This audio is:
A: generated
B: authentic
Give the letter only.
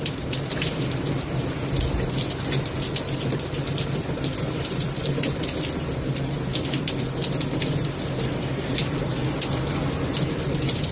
B